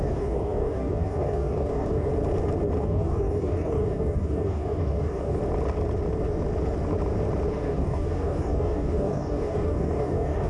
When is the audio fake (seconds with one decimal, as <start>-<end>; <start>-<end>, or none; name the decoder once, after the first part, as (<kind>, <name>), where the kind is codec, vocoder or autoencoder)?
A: 0.0-2.1 (codec, DAC); 2.8-5.4; 7.5-10.5